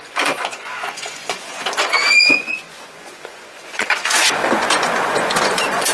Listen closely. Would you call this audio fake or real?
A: fake